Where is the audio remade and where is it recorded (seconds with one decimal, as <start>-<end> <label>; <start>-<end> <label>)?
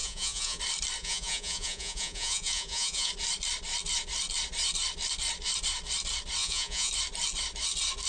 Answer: 0.0-0.6 remade; 0.6-1.0 recorded; 1.0-3.1 remade; 3.1-6.4 recorded; 6.4-6.9 remade; 6.9-8.1 recorded